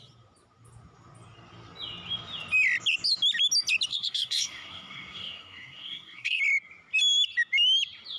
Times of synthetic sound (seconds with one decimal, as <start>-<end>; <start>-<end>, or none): 3.9-6.4